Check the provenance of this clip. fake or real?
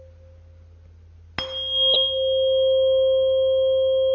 real